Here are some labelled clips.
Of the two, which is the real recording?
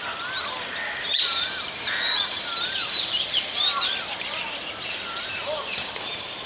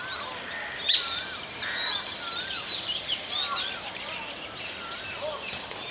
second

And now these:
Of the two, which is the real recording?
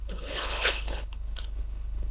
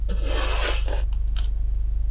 second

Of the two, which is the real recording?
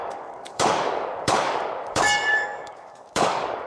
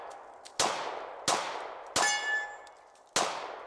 second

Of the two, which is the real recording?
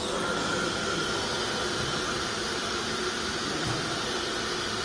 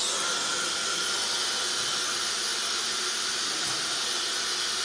second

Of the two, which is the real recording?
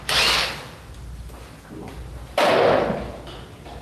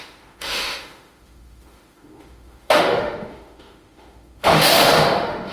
first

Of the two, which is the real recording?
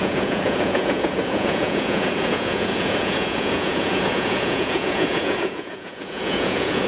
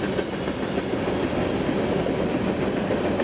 second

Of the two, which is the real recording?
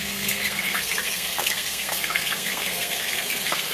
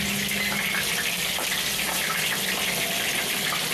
second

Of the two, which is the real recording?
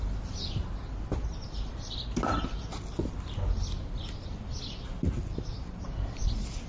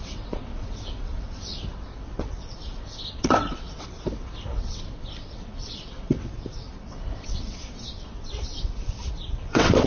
first